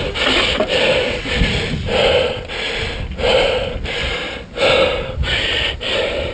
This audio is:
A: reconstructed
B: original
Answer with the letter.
B